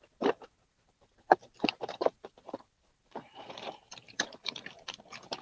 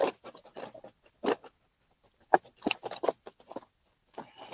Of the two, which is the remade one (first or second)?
first